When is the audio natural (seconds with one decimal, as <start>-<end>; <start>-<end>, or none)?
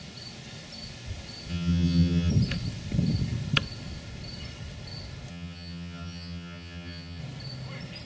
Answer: 0.0-1.5; 2.3-5.3; 7.2-8.0